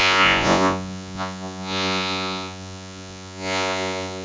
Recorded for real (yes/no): no